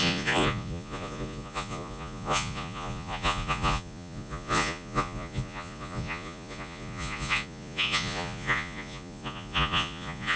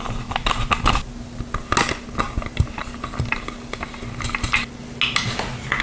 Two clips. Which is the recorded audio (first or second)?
second